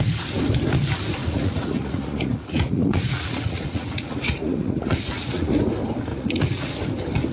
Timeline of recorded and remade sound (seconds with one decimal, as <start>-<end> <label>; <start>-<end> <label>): 0.0-1.2 recorded; 1.2-5.6 remade; 5.6-6.1 recorded; 6.1-6.8 remade; 6.8-7.3 recorded

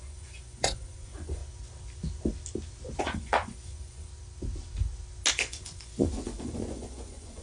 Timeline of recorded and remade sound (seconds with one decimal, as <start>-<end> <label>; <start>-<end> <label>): 0.0-1.4 remade; 1.4-3.0 recorded; 3.0-4.1 remade; 4.1-5.3 recorded; 5.3-7.4 remade

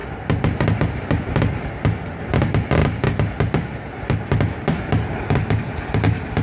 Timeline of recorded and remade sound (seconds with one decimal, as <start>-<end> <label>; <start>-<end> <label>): 0.0-6.4 recorded

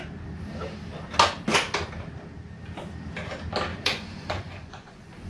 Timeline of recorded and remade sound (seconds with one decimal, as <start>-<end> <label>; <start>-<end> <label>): 0.0-3.7 recorded; 3.7-5.3 remade

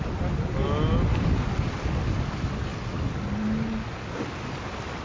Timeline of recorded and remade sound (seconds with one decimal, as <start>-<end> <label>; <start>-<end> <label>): 0.0-5.0 recorded

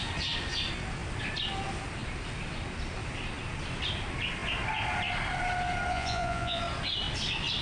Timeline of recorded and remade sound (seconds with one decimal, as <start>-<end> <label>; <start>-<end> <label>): 0.0-5.9 recorded; 5.9-6.6 remade; 6.6-7.6 recorded

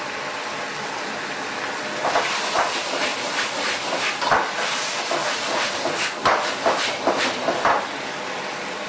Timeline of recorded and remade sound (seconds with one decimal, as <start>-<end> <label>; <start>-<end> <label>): 0.0-5.2 recorded; 5.2-5.7 remade; 5.7-8.9 recorded

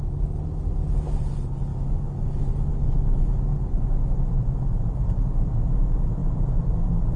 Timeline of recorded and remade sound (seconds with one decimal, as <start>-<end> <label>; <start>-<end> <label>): 0.0-7.2 recorded